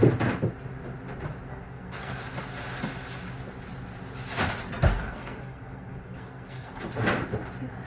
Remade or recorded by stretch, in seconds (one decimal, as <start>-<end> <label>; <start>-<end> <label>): 0.0-1.5 recorded; 1.5-2.2 remade; 2.2-4.9 recorded; 4.9-6.8 remade; 6.8-7.9 recorded